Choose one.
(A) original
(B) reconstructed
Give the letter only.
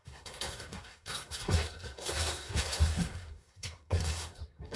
B